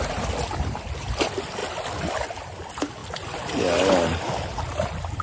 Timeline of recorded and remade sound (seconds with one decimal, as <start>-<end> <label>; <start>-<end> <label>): 0.0-5.2 recorded